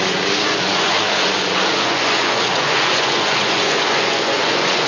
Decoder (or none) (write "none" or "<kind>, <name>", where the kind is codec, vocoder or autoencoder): vocoder, Vocos